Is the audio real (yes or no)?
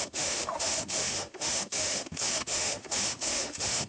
no